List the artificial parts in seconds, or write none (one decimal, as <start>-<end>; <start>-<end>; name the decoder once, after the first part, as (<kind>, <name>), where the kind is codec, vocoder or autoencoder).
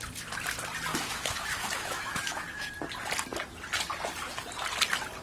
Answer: 0.9-2.7 (autoencoder, DAC-VAE)